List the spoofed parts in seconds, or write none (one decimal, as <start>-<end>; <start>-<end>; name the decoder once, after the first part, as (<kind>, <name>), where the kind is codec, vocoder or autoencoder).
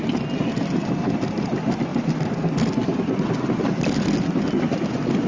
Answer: none